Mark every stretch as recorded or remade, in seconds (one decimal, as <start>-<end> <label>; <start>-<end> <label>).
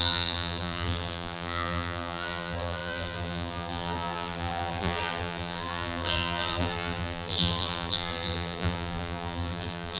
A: 0.0-10.0 remade